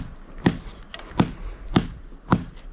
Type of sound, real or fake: real